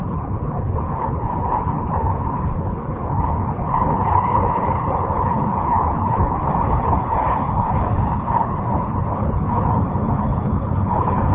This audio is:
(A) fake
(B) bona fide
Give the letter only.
A